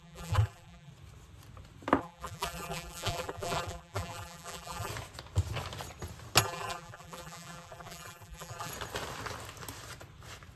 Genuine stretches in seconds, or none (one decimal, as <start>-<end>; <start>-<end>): 0.9-2.0; 4.9-6.4; 8.7-10.6